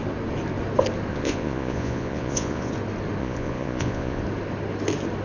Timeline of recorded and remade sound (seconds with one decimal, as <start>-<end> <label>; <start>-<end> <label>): 0.0-1.1 recorded; 1.1-2.7 remade; 2.7-3.2 recorded; 3.2-4.2 remade; 4.2-5.2 recorded